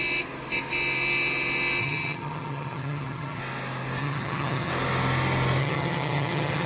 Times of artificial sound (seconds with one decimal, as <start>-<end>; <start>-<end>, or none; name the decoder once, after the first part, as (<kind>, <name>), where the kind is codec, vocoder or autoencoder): 1.8-3.4 (vocoder, HiFi-GAN); 4.0-4.7; 5.6-6.7